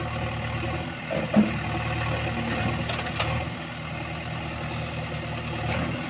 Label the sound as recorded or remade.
recorded